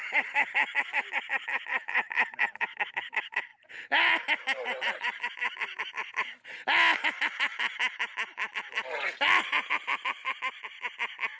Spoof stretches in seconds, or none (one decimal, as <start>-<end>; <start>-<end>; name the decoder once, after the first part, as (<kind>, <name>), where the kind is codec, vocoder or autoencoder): none

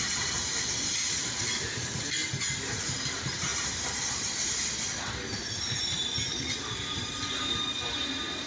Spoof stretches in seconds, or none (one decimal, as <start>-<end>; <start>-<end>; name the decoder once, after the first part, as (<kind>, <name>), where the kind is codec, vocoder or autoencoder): none

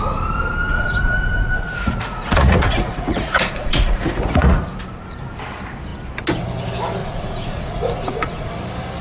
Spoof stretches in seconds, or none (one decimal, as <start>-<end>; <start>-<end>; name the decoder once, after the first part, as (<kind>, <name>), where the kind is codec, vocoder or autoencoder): 0.7-4.6 (vocoder, Vocos); 7.0-8.5

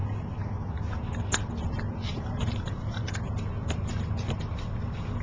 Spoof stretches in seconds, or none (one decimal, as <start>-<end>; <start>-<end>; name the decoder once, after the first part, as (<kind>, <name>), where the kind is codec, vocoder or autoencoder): 1.6-5.2 (vocoder, BigVGAN v2)

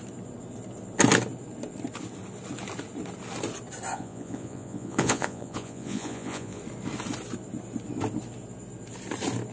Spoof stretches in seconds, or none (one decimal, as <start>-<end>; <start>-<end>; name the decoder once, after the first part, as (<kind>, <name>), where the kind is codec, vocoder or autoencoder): 3.9-6.6 (vocoder, Vocos)

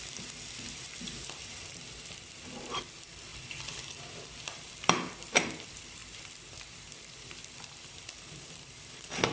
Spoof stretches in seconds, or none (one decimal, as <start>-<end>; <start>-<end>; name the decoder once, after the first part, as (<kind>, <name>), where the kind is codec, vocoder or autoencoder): 0.0-6.0 (vocoder, BigVGAN v2); 6.5-9.3